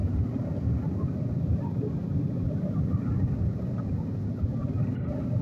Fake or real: real